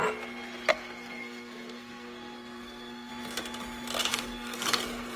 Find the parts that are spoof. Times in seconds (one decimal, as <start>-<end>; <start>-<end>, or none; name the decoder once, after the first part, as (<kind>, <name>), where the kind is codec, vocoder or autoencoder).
0.7-3.1 (codec, SNAC); 4.1-5.2